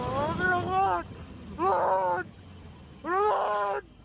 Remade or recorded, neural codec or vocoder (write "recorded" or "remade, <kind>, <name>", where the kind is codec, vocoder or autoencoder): recorded